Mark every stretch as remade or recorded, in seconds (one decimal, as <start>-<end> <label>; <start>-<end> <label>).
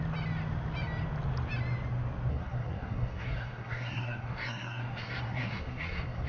0.0-2.3 recorded; 2.3-6.3 remade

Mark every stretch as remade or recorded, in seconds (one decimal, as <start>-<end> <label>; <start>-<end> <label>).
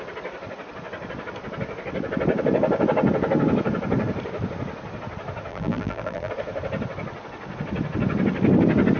0.0-5.5 recorded; 5.5-6.3 remade; 6.3-9.0 recorded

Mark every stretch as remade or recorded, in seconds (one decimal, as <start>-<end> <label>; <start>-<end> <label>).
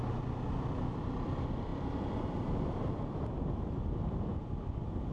0.0-5.1 recorded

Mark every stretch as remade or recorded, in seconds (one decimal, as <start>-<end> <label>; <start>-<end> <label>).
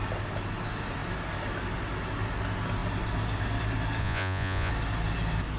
0.0-4.0 recorded; 4.0-4.7 remade; 4.7-5.6 recorded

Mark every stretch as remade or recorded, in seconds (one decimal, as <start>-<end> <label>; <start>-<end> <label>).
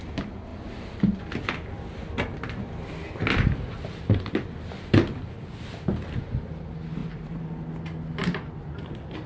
0.0-7.0 recorded; 7.0-7.7 remade; 7.7-9.3 recorded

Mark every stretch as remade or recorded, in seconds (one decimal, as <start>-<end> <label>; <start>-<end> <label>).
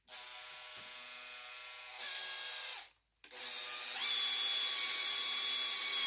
0.0-6.1 recorded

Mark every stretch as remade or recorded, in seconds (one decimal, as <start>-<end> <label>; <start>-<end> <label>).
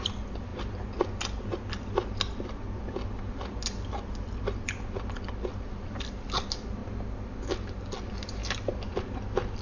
0.0-9.6 recorded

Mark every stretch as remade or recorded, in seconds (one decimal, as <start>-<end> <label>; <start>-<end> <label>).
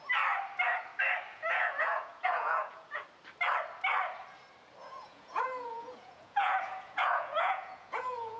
0.0-1.3 recorded; 1.3-3.0 remade; 3.0-4.8 recorded; 4.8-8.4 remade